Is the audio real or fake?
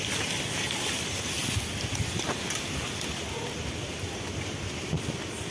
real